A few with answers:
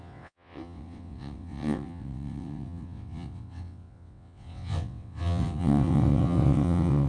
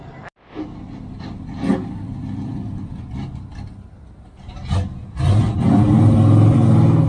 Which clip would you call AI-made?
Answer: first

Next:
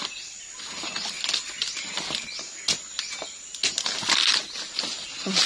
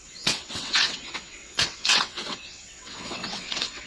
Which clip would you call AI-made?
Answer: second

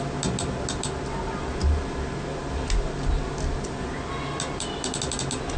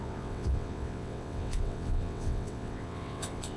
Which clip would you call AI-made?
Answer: second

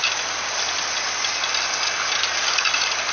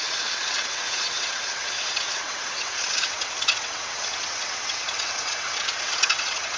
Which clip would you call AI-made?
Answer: second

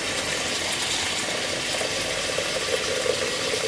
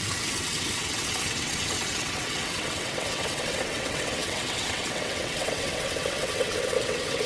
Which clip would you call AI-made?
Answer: second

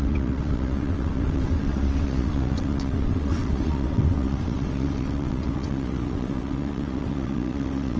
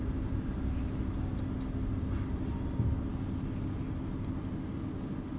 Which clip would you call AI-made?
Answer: first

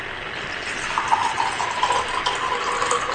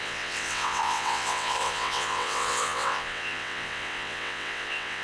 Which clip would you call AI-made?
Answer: second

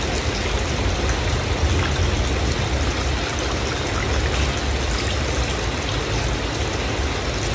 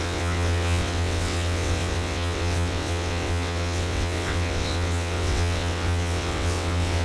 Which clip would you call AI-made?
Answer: second